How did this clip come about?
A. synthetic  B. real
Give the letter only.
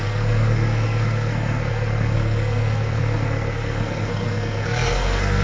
A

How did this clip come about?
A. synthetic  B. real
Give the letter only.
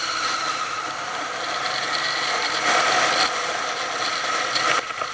B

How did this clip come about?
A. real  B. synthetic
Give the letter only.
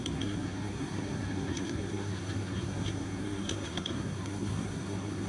B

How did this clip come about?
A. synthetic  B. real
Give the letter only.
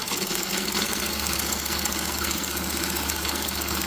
A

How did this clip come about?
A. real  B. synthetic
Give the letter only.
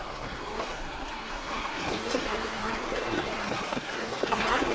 B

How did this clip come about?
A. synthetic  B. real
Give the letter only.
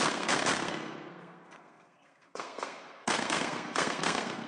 A